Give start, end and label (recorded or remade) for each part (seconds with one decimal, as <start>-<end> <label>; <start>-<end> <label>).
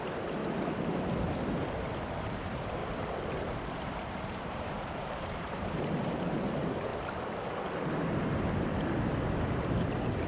0.0-0.4 remade; 0.4-1.2 recorded; 1.2-2.8 remade; 2.8-3.5 recorded; 3.5-6.9 remade; 6.9-9.7 recorded; 9.7-10.3 remade